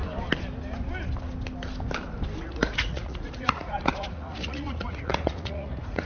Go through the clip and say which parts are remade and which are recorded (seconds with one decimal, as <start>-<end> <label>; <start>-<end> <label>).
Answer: 0.0-2.4 recorded; 2.4-6.1 remade